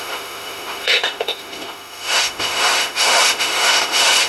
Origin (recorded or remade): remade